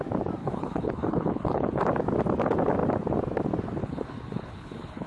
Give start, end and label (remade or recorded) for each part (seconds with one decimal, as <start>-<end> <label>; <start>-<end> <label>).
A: 0.0-0.4 recorded; 0.4-1.8 remade; 1.8-3.8 recorded; 3.8-5.1 remade